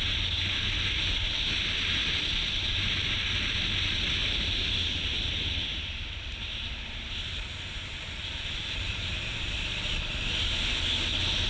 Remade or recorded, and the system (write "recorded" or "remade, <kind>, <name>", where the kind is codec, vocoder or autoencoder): recorded